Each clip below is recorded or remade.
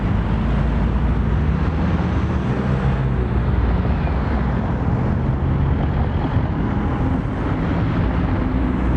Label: recorded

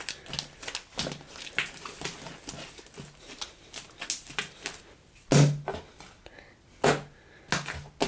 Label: recorded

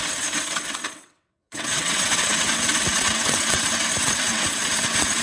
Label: remade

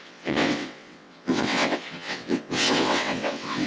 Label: remade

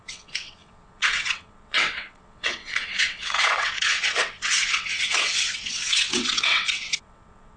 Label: remade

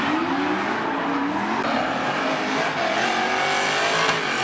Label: recorded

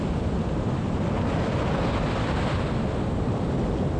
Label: recorded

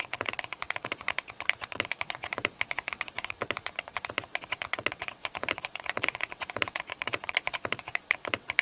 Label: remade